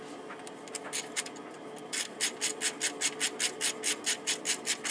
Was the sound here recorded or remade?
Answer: recorded